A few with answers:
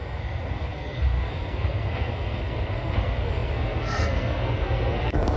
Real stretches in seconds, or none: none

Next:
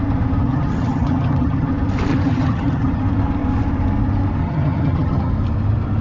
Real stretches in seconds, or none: 0.0-0.4; 1.7-2.1; 3.0-4.4; 5.3-6.0

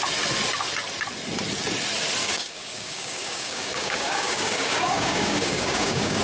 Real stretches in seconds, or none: 0.0-2.2

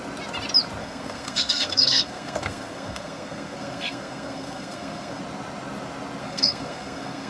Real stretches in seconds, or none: 0.0-0.8; 5.2-6.2

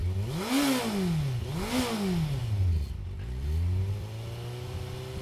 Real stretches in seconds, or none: 0.0-5.2

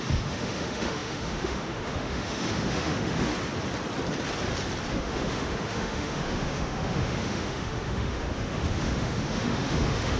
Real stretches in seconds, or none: 3.3-4.9